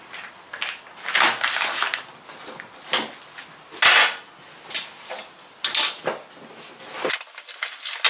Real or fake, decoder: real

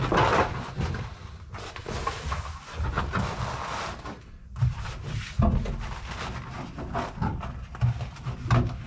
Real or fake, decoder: real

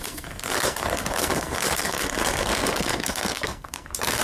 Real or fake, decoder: fake, codec, SNAC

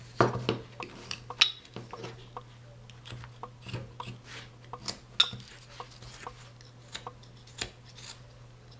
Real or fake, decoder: real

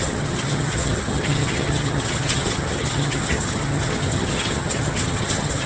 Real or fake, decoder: fake, vocoder, HiFi-GAN